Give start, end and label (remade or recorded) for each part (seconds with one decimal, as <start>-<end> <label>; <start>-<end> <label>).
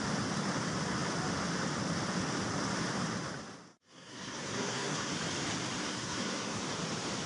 0.0-3.7 recorded; 3.7-5.1 remade; 5.1-5.8 recorded; 5.8-6.6 remade; 6.6-7.3 recorded